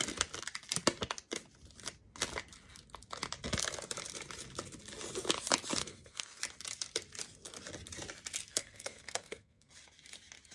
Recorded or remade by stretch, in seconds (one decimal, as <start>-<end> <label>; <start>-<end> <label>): 0.0-5.8 recorded; 5.8-6.4 remade; 6.4-8.5 recorded; 8.5-9.7 remade; 9.7-10.5 recorded